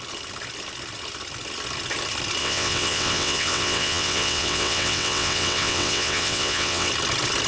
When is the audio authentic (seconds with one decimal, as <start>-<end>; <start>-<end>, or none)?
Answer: 0.0-2.4; 6.9-7.5